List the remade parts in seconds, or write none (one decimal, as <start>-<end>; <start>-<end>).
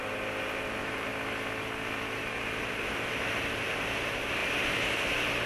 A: 0.0-1.1; 2.2-5.5